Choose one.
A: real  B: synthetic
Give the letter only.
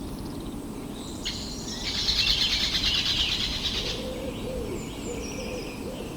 A